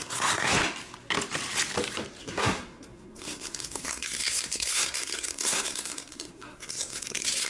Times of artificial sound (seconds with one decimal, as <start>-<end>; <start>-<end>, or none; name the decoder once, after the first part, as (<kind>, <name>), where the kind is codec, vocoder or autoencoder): 0.0-0.6 (codec, SNAC); 2.2-7.5